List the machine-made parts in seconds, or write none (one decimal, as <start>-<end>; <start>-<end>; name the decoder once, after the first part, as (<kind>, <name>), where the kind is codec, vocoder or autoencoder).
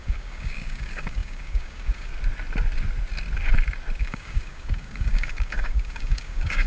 0.0-2.1 (codec, DAC); 4.0-6.7